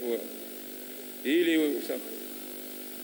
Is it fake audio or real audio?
real